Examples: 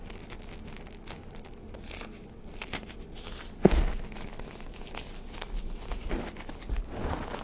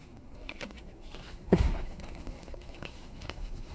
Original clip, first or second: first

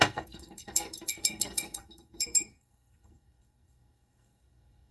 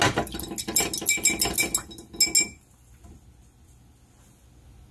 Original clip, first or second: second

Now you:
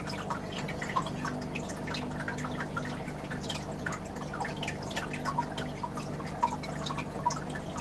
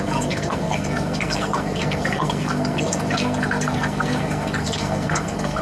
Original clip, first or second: first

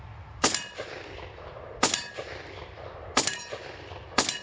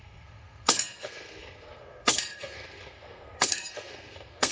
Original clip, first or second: first